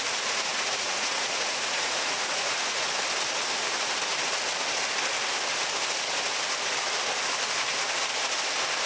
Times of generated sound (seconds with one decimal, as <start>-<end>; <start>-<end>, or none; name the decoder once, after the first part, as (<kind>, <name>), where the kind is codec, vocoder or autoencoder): 0.5-2.9 (vocoder, Vocos)